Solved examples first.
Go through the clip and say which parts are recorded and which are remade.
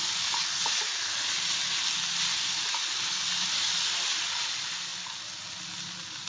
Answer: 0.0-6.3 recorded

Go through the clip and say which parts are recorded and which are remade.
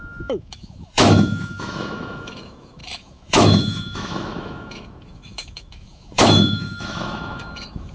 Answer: 0.0-7.9 remade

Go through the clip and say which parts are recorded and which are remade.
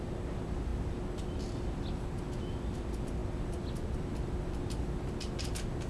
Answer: 0.0-5.9 recorded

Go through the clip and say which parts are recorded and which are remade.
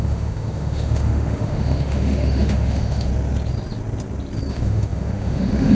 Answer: 0.0-3.1 remade; 3.1-4.5 recorded; 4.5-5.7 remade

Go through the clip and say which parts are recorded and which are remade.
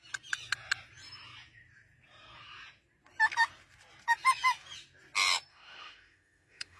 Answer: 0.0-5.5 recorded; 5.5-6.8 remade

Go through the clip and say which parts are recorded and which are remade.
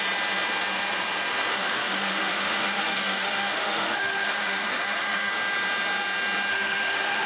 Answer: 0.0-1.5 recorded; 1.5-5.3 remade; 5.3-6.5 recorded; 6.5-7.3 remade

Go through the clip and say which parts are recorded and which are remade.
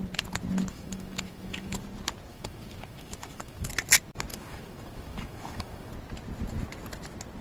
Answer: 0.0-0.7 recorded; 0.7-1.8 remade; 1.8-2.3 recorded; 2.3-3.7 remade; 3.7-4.3 recorded; 4.3-5.9 remade; 5.9-7.4 recorded